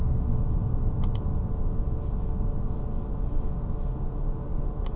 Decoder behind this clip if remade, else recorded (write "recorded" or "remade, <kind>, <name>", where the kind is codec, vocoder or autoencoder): recorded